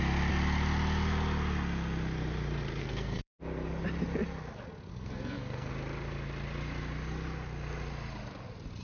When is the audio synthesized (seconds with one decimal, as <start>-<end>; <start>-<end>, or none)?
2.8-3.4; 4.9-5.7